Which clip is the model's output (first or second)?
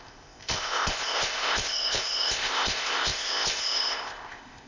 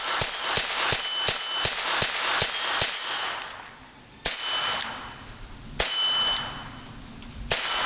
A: first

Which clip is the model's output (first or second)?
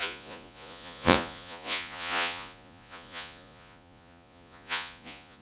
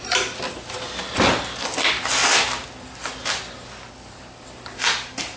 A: first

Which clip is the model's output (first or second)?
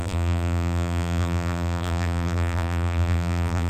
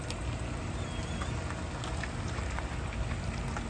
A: first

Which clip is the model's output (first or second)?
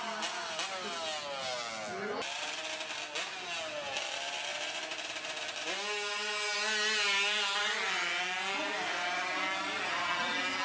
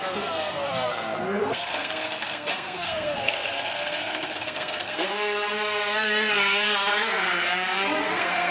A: second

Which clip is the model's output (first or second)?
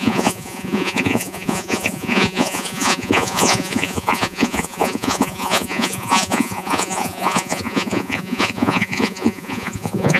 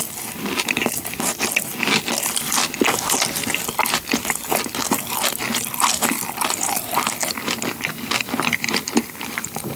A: first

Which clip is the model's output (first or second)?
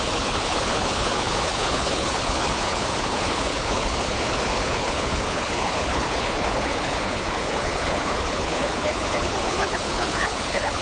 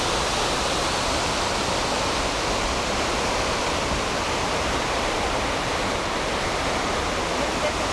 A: first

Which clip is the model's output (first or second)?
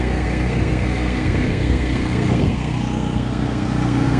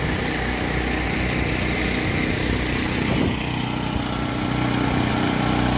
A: first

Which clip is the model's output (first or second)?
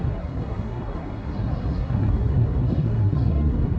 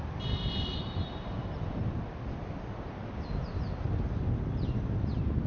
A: first